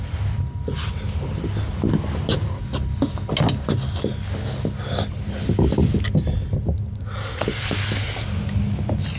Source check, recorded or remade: recorded